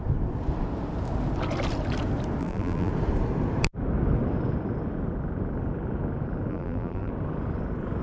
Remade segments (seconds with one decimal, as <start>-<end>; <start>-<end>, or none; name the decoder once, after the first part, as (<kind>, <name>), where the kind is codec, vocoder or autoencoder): 2.4-2.9 (vocoder, BigVGAN v2); 6.5-7.1